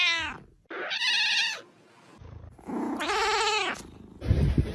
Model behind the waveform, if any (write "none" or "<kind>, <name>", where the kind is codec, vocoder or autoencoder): none